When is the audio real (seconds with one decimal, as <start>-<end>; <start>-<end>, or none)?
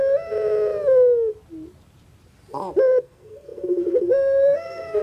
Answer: 0.0-3.0